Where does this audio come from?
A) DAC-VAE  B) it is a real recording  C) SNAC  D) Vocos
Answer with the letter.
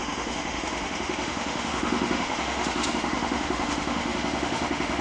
A